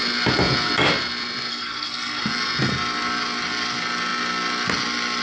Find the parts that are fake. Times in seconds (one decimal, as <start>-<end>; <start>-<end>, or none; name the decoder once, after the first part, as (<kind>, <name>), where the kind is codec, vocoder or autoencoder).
1.5-2.2 (codec, SNAC)